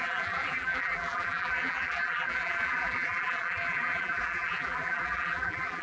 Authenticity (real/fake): fake